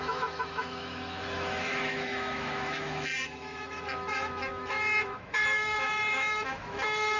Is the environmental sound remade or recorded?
remade